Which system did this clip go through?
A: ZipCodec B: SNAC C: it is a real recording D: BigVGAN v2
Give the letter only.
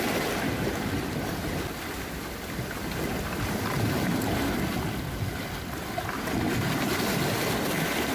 C